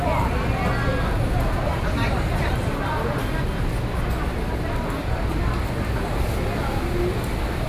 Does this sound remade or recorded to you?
recorded